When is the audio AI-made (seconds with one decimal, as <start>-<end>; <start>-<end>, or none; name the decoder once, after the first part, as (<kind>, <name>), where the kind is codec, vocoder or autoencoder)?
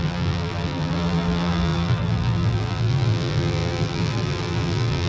0.0-5.1 (vocoder, BigVGAN v2)